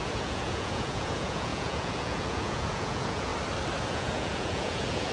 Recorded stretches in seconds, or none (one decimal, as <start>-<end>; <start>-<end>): 3.3-3.9